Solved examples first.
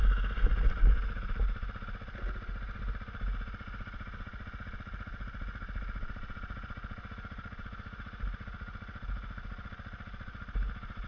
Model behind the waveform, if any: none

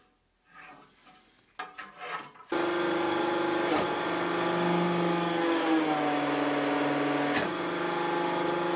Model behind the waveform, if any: none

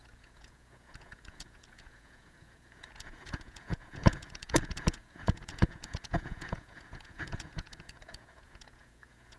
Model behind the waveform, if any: vocoder, Vocos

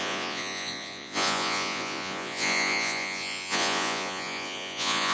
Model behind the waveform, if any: vocoder, Vocos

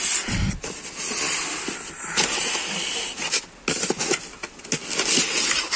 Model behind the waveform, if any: none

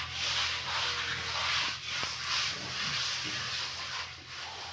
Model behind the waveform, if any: none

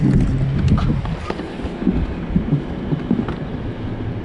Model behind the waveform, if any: none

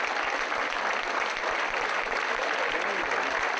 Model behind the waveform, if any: none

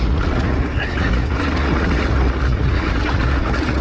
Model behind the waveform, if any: vocoder, Vocos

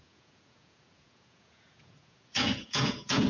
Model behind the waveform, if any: vocoder, Vocos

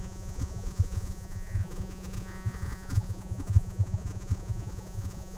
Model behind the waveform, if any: vocoder, Vocos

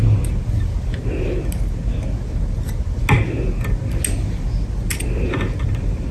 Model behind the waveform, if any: none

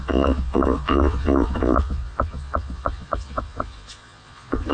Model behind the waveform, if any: vocoder, Vocos